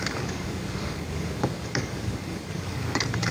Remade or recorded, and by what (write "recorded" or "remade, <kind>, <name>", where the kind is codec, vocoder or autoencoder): remade, codec, DAC